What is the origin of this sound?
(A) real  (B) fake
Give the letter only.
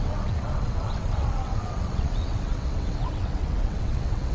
B